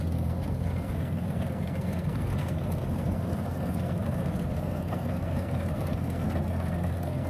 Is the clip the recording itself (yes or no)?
no